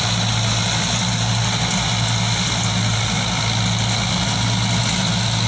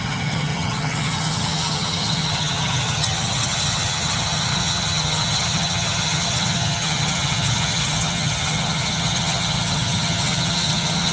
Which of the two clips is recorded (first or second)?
first